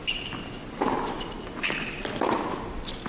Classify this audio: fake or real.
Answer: real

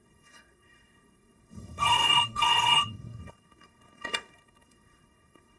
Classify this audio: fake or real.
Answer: fake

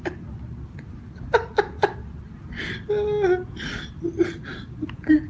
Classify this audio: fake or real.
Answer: real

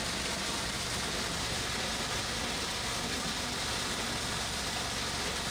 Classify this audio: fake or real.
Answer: real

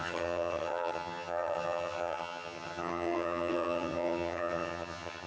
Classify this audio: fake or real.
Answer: fake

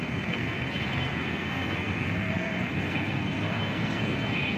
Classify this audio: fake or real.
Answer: fake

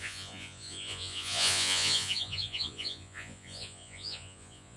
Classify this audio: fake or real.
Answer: fake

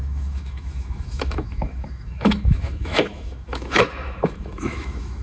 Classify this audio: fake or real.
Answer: fake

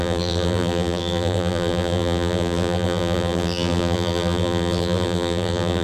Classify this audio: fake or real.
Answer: fake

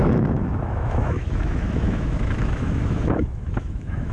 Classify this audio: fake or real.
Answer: fake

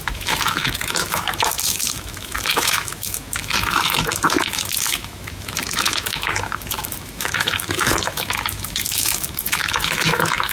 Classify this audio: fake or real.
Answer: fake